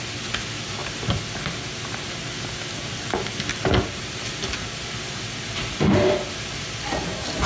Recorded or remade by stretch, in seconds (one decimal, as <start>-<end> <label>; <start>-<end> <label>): 0.0-7.5 recorded